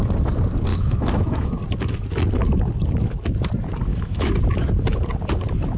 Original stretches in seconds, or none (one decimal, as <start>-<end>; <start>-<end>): 0.0-0.7; 1.6-3.9; 4.4-5.8